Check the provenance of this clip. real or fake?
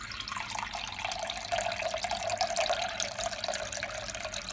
real